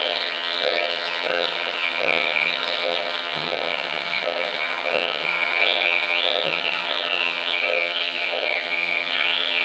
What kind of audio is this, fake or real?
fake